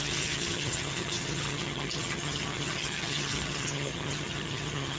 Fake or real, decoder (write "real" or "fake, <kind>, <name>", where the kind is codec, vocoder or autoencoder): fake, vocoder, HiFi-GAN